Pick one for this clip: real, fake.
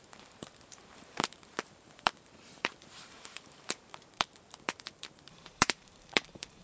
fake